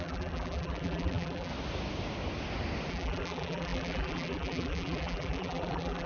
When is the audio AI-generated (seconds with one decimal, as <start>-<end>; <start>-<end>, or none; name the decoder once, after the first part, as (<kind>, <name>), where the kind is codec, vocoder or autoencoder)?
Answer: 0.0-1.5 (vocoder, BigVGAN v2); 2.9-6.1